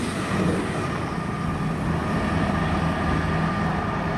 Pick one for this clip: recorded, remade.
recorded